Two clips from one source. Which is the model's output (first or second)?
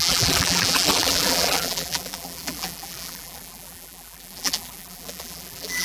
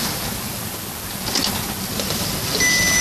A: first